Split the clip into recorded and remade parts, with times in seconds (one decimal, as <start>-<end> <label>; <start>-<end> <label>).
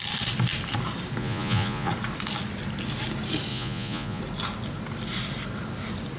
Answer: 0.0-1.2 recorded; 1.2-1.9 remade; 1.9-3.5 recorded; 3.5-4.2 remade; 4.2-6.2 recorded